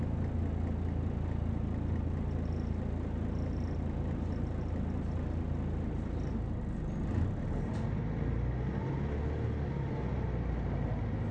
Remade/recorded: recorded